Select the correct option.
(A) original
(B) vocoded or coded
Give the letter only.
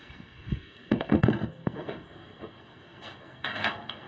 B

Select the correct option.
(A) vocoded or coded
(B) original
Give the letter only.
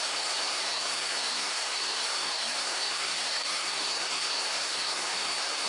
A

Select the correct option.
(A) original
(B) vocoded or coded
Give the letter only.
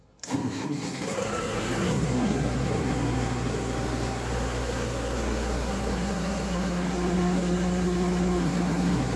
B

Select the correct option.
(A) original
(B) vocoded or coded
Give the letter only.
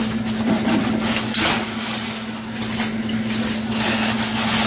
A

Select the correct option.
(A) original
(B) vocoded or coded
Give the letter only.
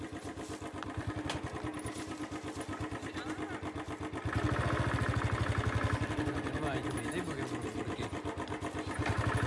A